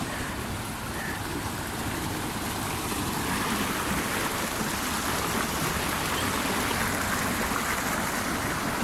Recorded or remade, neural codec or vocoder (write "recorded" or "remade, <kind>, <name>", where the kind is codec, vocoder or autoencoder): recorded